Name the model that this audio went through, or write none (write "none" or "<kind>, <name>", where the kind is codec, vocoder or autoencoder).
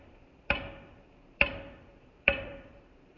vocoder, BigVGAN v2